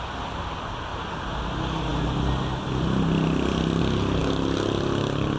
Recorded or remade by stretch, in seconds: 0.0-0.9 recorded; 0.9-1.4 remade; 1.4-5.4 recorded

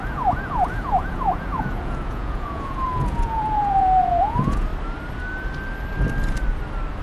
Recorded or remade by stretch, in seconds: 0.0-4.7 remade; 4.7-7.0 recorded

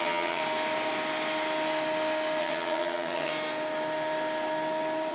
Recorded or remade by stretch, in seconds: 0.0-0.4 remade; 0.4-2.4 recorded; 2.4-3.3 remade; 3.3-5.1 recorded

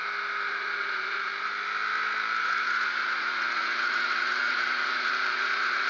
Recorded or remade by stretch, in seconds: 0.0-0.5 recorded; 0.5-1.3 remade; 1.3-2.4 recorded; 2.4-5.9 remade